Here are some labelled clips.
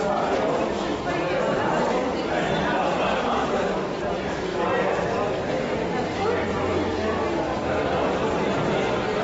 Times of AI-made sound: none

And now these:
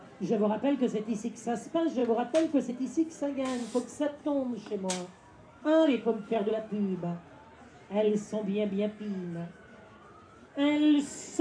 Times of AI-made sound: 3.6-6.5

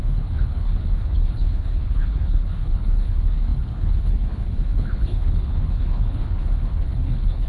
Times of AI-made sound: 0.0-7.5

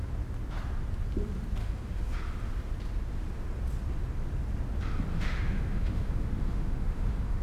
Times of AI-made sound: 1.6-2.2; 5.1-7.4

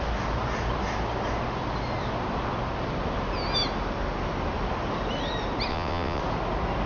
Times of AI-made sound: 5.7-6.2

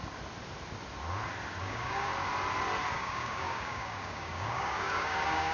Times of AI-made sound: 1.6-2.1; 2.9-5.5